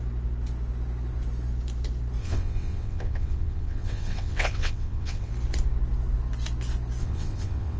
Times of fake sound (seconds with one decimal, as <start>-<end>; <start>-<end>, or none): 2.2-5.3; 7.0-7.8